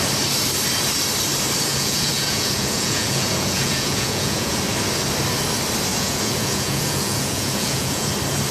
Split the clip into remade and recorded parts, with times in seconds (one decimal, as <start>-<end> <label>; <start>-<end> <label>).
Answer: 0.0-1.7 recorded; 1.7-4.6 remade; 4.6-5.9 recorded; 5.9-8.1 remade; 8.1-8.5 recorded